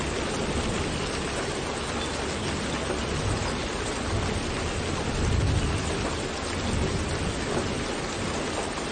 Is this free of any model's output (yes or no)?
yes